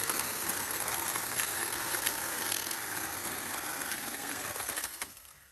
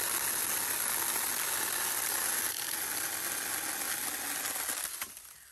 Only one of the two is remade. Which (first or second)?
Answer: first